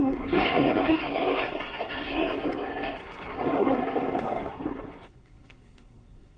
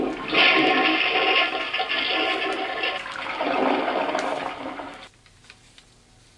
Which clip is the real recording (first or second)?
second